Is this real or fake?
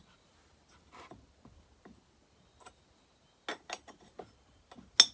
real